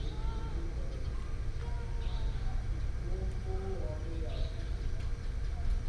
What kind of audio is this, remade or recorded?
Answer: recorded